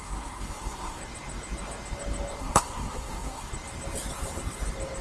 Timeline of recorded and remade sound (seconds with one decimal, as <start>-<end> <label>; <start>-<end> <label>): 0.0-1.0 remade; 1.0-2.4 recorded; 2.4-3.5 remade; 3.5-5.0 recorded